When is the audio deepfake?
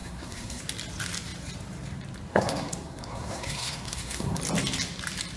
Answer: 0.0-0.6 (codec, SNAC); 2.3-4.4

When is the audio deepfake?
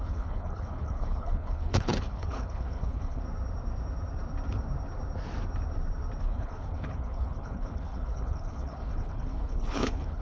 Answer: 0.0-3.2 (codec, HILCodec); 6.2-10.2